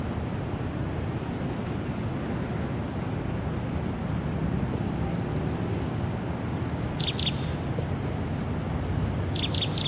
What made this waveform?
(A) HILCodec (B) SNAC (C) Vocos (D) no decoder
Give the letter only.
D